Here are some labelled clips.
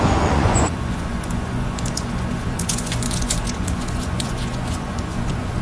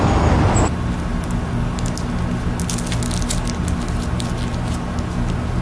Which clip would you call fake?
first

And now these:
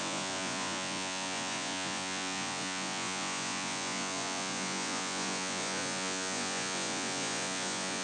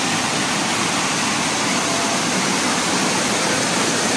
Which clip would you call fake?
first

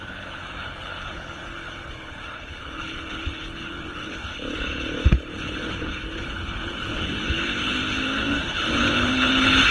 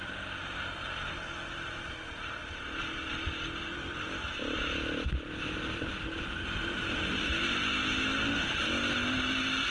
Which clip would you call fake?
first